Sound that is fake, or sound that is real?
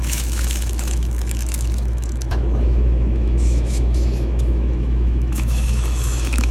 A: fake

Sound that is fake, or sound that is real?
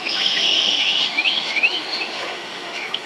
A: fake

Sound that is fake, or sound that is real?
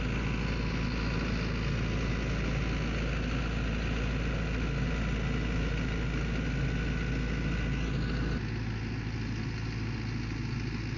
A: real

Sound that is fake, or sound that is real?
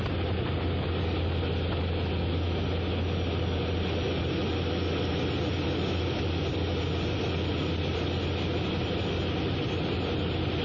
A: real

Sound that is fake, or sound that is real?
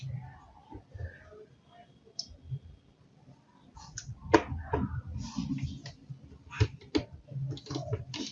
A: real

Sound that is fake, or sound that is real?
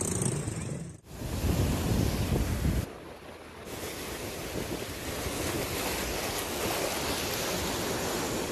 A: real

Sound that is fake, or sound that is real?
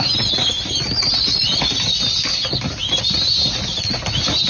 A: real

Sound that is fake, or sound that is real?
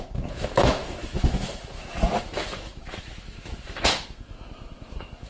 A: fake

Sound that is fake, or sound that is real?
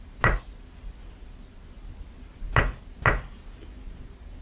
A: real